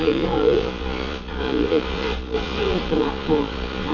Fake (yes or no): yes